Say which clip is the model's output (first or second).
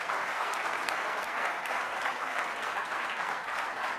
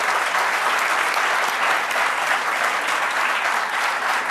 first